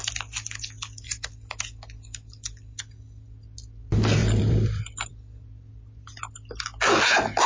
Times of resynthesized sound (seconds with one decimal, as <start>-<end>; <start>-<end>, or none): 4.2-5.1